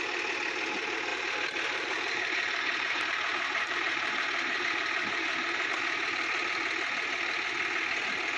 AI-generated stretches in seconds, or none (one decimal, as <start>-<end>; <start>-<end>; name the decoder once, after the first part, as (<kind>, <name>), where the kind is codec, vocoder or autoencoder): 1.1-5.7 (vocoder, BigVGAN v2)